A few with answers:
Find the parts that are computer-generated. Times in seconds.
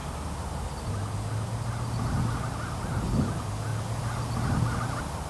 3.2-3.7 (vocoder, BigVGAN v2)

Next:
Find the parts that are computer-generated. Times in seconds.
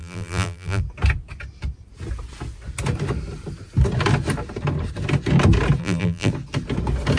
0.0-0.8 (vocoder, BigVGAN v2); 5.8-6.3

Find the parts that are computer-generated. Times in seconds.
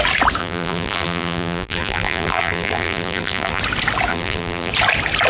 0.4-3.6 (vocoder, BigVGAN v2); 4.1-4.7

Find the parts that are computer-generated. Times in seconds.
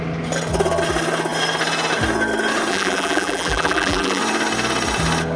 2.7-4.2 (vocoder, BigVGAN v2)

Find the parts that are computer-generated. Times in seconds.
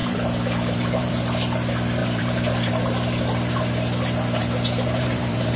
0.0-1.1 (vocoder, BigVGAN v2); 2.0-2.7; 4.4-5.6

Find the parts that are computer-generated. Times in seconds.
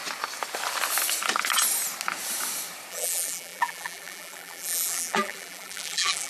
2.9-6.3 (vocoder, BigVGAN v2)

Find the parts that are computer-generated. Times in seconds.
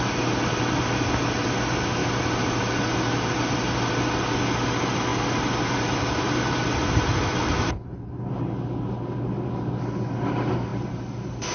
2.0-2.8 (vocoder, BigVGAN v2); 5.1-8.4